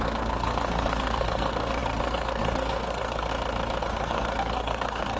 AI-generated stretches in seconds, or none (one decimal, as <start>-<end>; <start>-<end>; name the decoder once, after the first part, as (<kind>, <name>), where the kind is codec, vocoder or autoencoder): 0.0-3.3 (codec, SNAC); 3.8-5.2

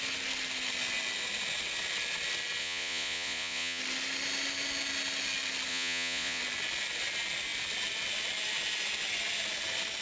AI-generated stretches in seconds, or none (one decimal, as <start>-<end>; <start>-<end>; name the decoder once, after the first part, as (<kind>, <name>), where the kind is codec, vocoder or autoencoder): 2.6-3.8 (vocoder, Vocos); 5.7-6.4

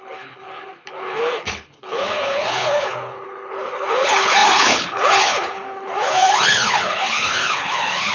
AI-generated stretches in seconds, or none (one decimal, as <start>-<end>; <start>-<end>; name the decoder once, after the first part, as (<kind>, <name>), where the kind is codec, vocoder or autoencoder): 0.0-8.1 (codec, HILCodec)